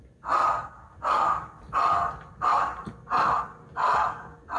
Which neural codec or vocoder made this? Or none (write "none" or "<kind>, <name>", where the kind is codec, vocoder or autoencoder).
none